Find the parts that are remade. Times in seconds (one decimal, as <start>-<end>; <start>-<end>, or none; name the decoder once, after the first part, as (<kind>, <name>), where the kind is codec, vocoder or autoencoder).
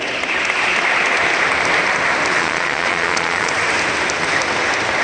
2.3-3.5 (vocoder, Vocos)